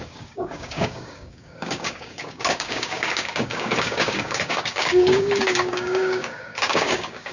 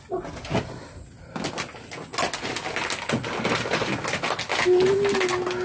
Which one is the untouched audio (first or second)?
second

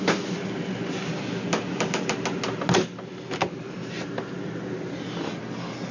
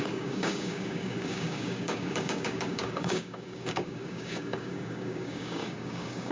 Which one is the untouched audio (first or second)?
first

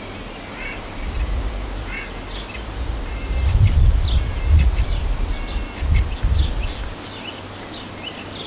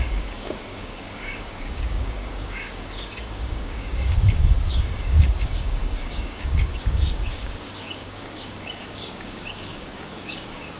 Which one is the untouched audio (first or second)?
first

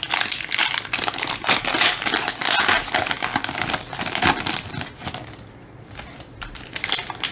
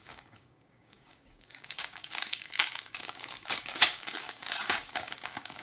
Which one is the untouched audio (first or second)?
first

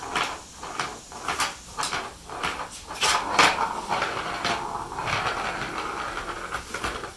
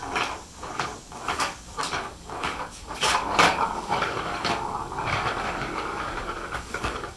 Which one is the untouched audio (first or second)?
first